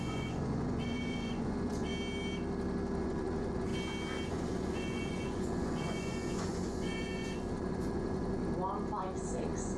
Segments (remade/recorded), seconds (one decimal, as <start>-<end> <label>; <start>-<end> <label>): 0.0-1.9 remade; 1.9-3.0 recorded; 3.0-3.7 remade; 3.7-4.3 recorded; 4.3-8.4 remade; 8.4-9.0 recorded; 9.0-9.8 remade